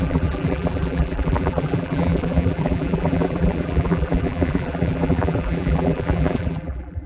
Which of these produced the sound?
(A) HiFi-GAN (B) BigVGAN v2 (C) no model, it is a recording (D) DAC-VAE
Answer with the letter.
B